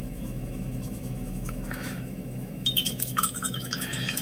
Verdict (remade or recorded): remade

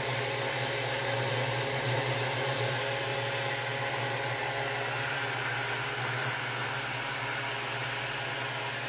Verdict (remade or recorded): recorded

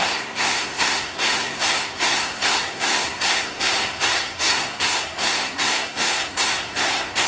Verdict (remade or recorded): remade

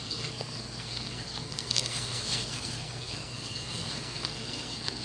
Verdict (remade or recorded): remade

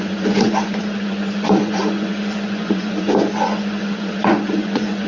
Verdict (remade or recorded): remade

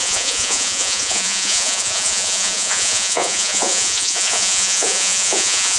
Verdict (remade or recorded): remade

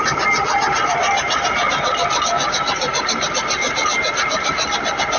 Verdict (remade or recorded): recorded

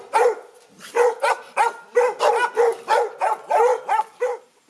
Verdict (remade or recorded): recorded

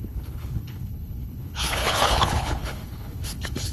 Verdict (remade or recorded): remade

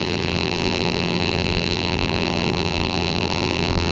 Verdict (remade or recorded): remade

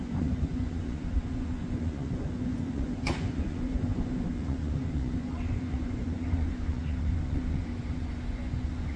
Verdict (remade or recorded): remade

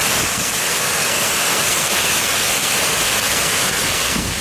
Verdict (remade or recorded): remade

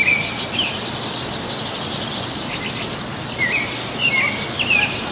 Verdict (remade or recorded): recorded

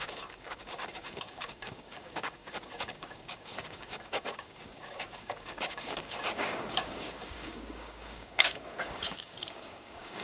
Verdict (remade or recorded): remade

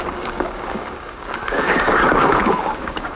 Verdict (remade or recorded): remade